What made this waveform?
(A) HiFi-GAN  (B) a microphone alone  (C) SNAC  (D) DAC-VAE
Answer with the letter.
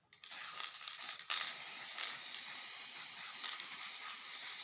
B